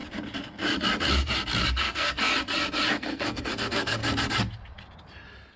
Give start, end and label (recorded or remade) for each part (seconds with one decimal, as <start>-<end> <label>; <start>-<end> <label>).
0.0-1.8 recorded; 1.8-2.3 remade; 2.3-2.9 recorded; 2.9-4.0 remade; 4.0-5.6 recorded